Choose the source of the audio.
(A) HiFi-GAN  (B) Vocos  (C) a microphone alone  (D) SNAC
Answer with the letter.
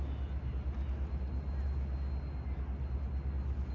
C